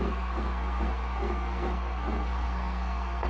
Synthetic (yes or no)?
yes